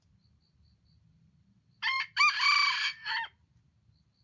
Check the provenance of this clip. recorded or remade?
recorded